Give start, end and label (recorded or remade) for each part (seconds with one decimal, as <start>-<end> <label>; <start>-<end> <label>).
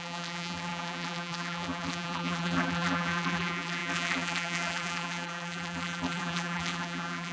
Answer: 0.0-7.3 remade